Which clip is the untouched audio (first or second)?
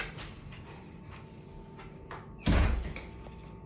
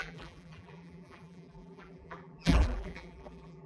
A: first